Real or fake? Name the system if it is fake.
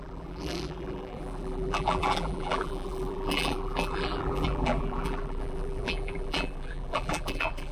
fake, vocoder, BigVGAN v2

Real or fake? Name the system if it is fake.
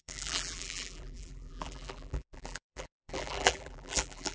fake, vocoder, BigVGAN v2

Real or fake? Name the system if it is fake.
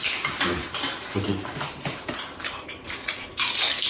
fake, vocoder, BigVGAN v2